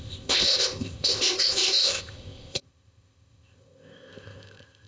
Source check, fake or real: fake